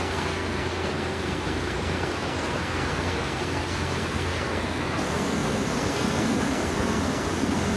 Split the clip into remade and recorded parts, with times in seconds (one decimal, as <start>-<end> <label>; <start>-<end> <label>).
0.0-7.8 remade